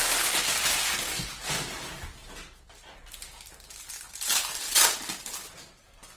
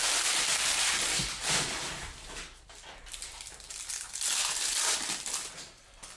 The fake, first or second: second